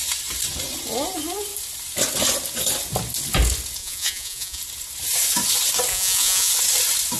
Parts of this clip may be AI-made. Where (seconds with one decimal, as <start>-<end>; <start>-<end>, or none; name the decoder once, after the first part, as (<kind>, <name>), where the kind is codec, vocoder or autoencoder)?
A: 3.8-4.6 (vocoder, Vocos); 5.9-6.5